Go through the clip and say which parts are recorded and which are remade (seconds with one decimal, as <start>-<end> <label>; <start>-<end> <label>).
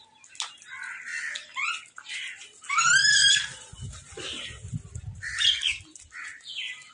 0.0-6.9 recorded